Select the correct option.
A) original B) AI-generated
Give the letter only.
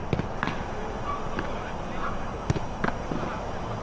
A